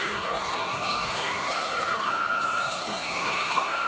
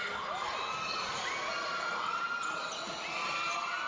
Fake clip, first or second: first